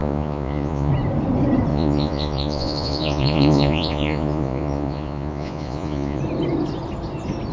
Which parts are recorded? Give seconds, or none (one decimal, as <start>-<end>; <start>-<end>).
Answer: 0.9-1.7; 6.2-7.5